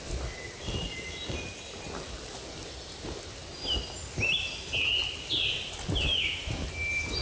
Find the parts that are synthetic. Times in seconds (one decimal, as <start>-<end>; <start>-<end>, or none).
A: 6.1-6.6